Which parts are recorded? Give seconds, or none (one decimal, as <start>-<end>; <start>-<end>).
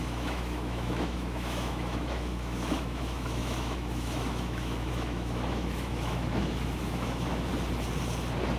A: 7.5-8.6